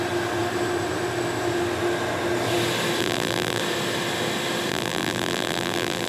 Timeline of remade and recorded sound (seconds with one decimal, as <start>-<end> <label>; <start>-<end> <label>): 0.0-3.0 recorded; 3.0-3.6 remade; 3.6-4.7 recorded; 4.7-6.1 remade